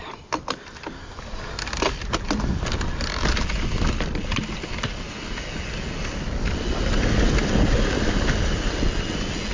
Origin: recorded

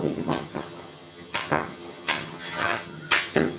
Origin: remade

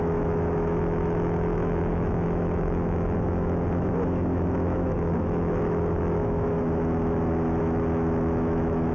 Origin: remade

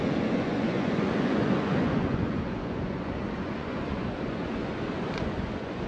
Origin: remade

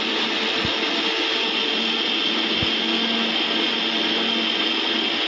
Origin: recorded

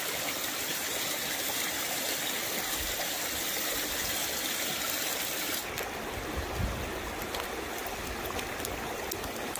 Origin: recorded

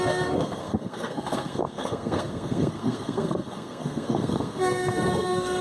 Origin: remade